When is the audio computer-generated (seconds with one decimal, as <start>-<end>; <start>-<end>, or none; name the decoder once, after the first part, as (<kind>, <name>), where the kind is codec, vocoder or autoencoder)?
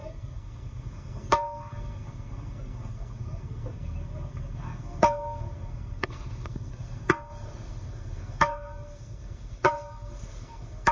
0.0-10.9 (codec, SNAC)